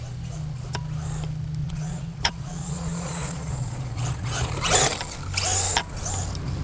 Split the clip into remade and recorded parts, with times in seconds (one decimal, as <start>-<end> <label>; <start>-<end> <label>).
0.0-1.6 recorded; 1.6-4.5 remade; 4.5-6.6 recorded